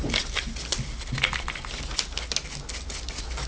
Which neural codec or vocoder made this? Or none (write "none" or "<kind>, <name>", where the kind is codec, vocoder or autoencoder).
none